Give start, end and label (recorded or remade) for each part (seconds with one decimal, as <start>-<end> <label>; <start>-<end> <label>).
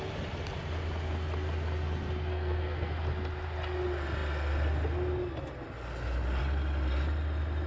0.0-2.3 recorded; 2.3-2.9 remade; 2.9-7.7 recorded